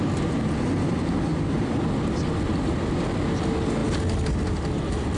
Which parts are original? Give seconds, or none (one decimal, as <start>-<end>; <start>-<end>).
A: 0.0-5.2